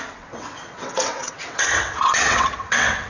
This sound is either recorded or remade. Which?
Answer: remade